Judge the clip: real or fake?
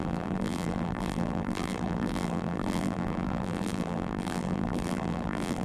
fake